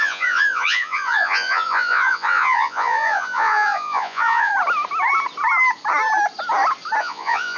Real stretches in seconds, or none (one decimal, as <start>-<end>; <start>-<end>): 4.5-7.0